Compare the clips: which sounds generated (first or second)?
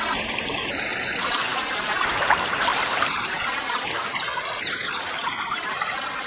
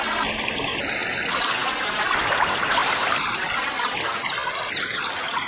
first